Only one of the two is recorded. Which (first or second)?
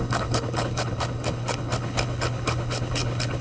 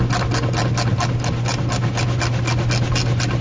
second